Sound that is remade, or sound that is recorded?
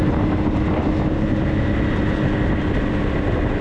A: recorded